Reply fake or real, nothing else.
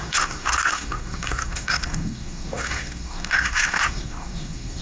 fake